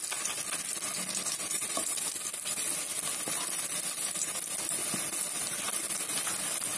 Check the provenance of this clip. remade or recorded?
recorded